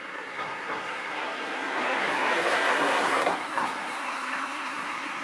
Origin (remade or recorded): remade